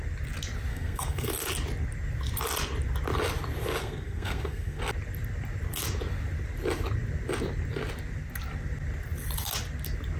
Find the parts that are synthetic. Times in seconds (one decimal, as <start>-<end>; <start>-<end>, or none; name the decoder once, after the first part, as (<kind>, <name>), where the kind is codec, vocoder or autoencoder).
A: 0.7-1.3 (codec, SNAC); 3.8-4.8